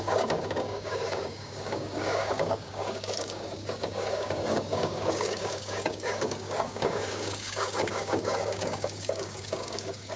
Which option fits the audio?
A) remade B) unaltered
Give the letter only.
A